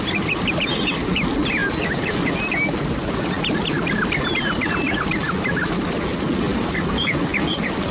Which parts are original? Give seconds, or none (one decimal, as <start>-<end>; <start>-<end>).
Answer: 0.0-7.9